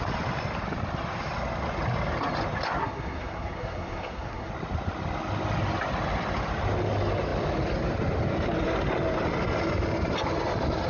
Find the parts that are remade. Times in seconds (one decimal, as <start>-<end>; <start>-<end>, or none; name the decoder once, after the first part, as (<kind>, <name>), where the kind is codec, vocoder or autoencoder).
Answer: 2.8-4.5 (codec, SNAC)